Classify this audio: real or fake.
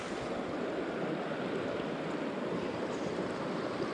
real